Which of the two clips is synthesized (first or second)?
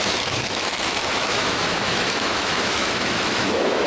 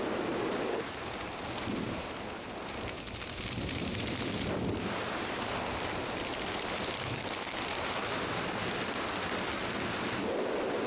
first